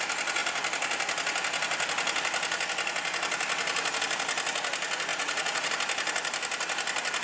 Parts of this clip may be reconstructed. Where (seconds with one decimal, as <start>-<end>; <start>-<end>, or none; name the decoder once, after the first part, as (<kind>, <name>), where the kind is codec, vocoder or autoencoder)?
5.1-5.7 (vocoder, Vocos)